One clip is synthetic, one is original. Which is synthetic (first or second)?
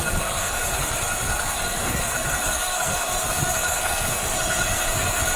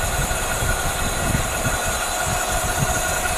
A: first